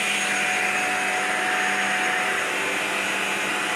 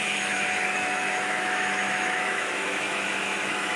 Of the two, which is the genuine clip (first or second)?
first